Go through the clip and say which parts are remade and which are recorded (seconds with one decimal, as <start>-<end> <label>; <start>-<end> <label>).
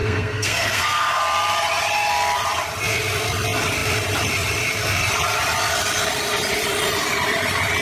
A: 0.0-1.2 remade; 1.2-7.8 recorded